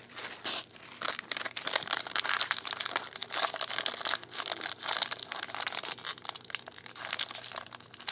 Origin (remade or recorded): recorded